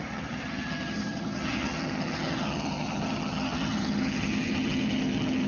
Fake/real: fake